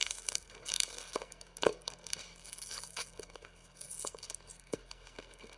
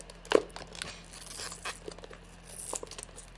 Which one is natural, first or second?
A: second